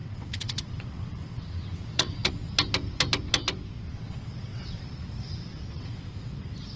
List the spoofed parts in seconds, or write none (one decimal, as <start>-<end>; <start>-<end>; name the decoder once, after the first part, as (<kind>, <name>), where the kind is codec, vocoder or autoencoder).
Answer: 0.0-2.3 (vocoder, WaveNeXt); 3.9-4.8; 5.5-6.1